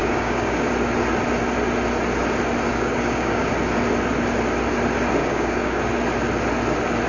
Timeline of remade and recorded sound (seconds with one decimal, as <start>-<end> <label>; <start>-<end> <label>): 0.0-0.7 remade; 0.7-2.7 recorded; 2.7-3.5 remade; 3.5-5.2 recorded; 5.2-5.8 remade; 5.8-7.1 recorded